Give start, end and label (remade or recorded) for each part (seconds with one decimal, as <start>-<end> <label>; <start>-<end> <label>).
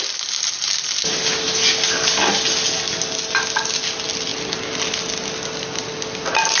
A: 0.0-1.6 recorded; 1.6-2.3 remade; 2.3-6.6 recorded